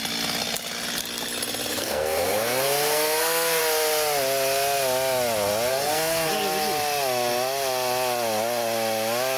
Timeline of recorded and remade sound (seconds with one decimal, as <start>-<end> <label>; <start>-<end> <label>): 0.0-1.7 recorded; 1.7-3.6 remade; 3.6-5.7 recorded; 5.7-6.3 remade; 6.3-9.4 recorded